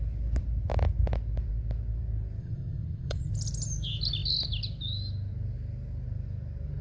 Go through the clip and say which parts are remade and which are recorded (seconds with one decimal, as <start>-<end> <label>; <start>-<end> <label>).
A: 0.0-2.4 recorded; 2.4-3.3 remade; 3.3-6.8 recorded